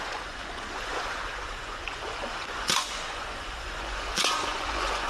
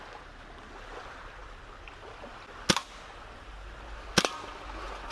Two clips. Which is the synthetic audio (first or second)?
first